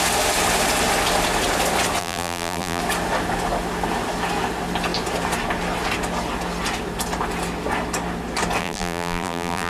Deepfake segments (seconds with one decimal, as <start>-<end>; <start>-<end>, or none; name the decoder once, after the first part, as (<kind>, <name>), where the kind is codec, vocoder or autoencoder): 2.0-2.8 (vocoder, BigVGAN v2); 8.6-9.7